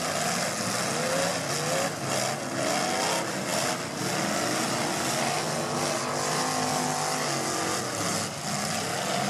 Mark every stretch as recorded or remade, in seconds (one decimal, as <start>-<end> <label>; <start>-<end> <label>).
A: 0.0-9.3 recorded